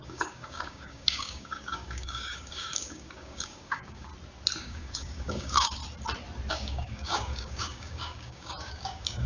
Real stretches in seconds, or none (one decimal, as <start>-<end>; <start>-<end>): 4.1-4.6; 5.8-6.5